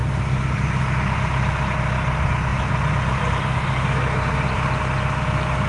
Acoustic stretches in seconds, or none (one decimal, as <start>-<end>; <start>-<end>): 0.8-2.5; 4.8-5.7